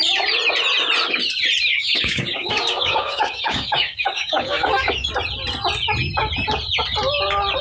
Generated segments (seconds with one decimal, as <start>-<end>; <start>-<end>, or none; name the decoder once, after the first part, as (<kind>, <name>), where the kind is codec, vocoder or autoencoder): 1.7-5.1 (codec, DAC)